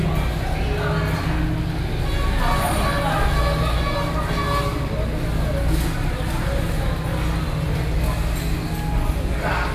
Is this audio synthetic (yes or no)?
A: no